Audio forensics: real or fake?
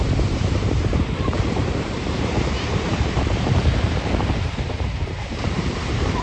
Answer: fake